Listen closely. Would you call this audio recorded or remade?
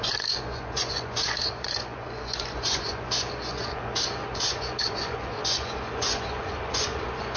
remade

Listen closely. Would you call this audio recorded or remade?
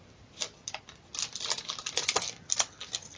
recorded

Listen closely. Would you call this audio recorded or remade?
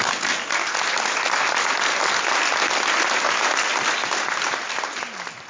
recorded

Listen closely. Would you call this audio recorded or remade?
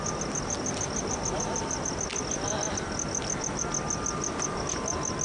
recorded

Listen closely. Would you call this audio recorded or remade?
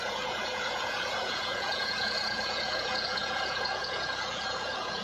remade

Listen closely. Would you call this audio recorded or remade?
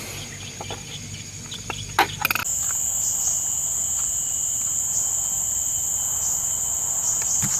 recorded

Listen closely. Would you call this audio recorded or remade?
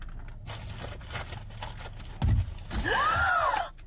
recorded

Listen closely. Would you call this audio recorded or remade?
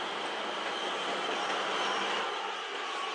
recorded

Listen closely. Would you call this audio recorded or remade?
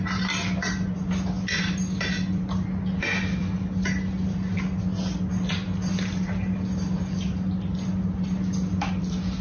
recorded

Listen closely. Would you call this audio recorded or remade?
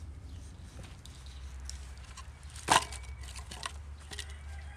recorded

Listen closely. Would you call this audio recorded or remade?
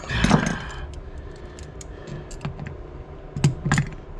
recorded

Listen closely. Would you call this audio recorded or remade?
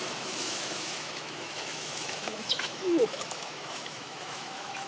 remade